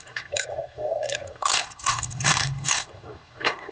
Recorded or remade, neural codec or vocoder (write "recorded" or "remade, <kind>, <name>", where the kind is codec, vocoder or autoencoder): remade, codec, SNAC